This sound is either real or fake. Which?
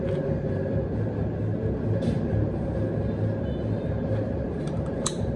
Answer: real